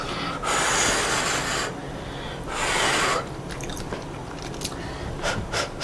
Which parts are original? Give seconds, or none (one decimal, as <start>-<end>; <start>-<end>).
0.0-5.8